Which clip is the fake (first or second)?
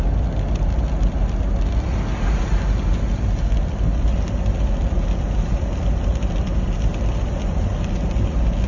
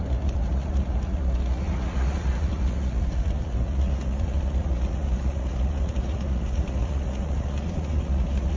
second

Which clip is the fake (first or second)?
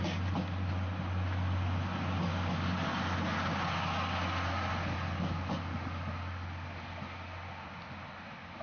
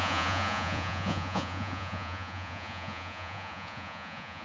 second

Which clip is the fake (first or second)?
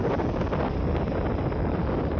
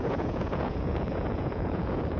second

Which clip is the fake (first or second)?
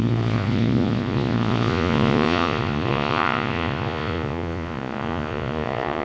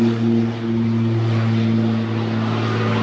first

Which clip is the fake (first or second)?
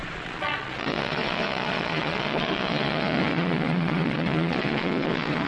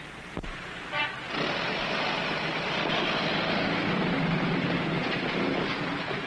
first